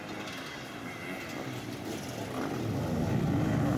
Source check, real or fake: real